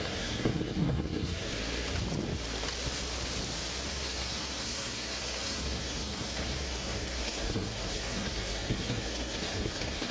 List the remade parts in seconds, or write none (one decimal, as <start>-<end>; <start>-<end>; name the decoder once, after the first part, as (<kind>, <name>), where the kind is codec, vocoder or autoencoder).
0.0-1.5 (codec, SNAC); 3.9-10.1